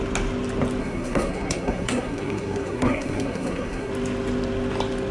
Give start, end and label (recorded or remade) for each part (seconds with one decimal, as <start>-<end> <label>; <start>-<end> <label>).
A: 0.0-0.8 recorded; 0.8-3.9 remade; 3.9-5.1 recorded